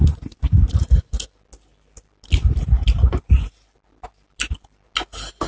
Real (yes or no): yes